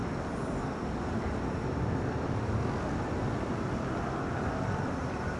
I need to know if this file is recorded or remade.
recorded